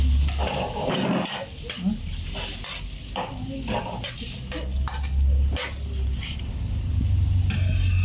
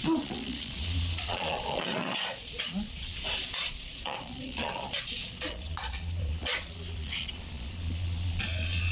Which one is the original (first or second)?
first